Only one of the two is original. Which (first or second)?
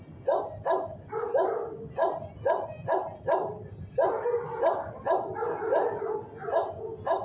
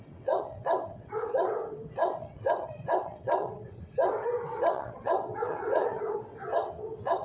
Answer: first